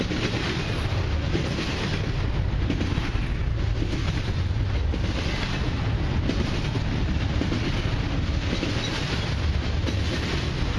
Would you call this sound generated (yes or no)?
no